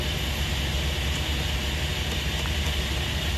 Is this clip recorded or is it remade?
recorded